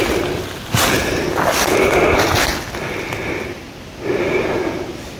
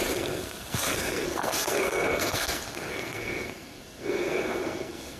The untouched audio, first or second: first